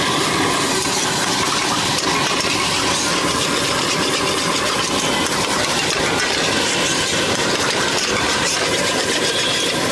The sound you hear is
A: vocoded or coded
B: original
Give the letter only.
A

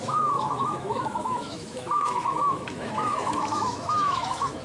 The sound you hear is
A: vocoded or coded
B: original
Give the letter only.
A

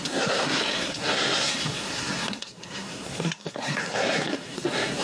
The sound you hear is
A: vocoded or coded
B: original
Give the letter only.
A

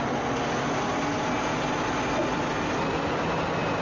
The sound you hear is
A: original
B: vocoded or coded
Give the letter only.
A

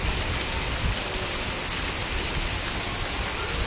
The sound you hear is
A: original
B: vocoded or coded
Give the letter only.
A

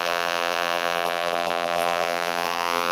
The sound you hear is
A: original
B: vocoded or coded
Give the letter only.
B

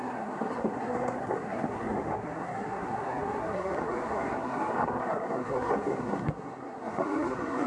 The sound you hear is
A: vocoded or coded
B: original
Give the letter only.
A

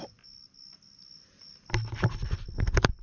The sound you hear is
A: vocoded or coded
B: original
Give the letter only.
B